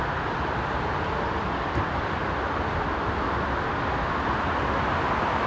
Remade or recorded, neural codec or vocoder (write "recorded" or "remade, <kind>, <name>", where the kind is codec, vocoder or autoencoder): recorded